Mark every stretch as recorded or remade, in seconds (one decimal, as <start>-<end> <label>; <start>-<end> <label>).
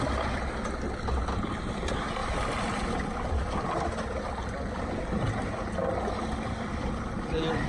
0.0-7.7 recorded